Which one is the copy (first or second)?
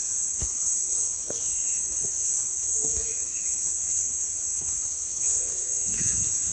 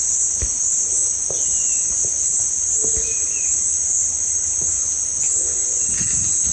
first